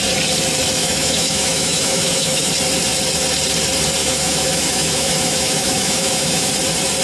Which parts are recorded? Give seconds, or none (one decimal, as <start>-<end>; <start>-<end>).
0.0-0.8; 2.5-4.0; 6.5-7.0